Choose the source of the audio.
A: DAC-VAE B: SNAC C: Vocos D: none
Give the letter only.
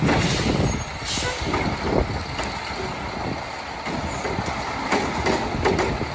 D